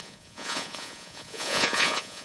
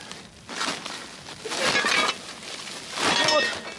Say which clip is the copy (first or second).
first